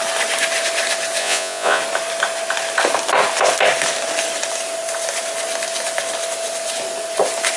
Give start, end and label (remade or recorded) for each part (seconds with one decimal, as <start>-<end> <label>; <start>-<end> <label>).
0.0-1.2 recorded; 1.2-1.8 remade; 1.8-7.6 recorded